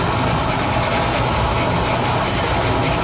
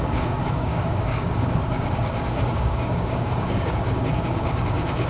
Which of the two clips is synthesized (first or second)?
second